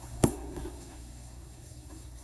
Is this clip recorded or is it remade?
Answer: remade